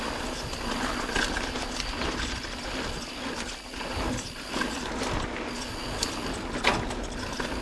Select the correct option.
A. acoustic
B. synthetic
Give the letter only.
A